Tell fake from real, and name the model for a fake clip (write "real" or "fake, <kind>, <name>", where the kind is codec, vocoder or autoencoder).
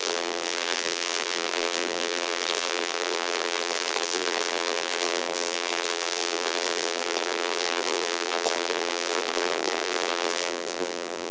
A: fake, vocoder, BigVGAN v2